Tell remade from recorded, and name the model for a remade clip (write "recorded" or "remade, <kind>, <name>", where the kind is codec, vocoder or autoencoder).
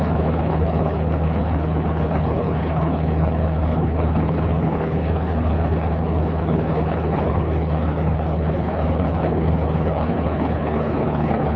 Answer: remade, codec, HILCodec